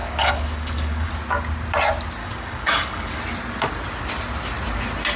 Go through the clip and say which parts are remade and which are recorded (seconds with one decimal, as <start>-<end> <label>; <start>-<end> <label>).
0.0-1.1 remade; 1.1-2.2 recorded; 2.2-3.2 remade; 3.2-5.2 recorded